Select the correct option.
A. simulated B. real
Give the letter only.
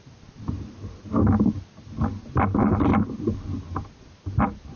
B